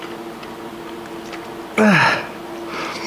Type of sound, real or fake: real